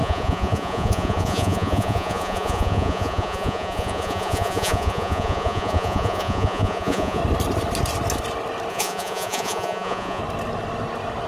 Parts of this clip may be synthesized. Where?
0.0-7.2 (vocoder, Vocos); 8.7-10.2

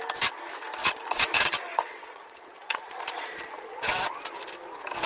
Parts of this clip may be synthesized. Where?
0.8-3.9 (vocoder, Vocos)

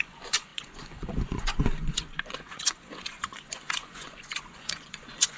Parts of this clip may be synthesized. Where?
0.0-5.4 (vocoder, Vocos)

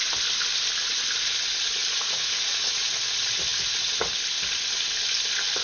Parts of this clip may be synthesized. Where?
1.8-2.9 (vocoder, Vocos)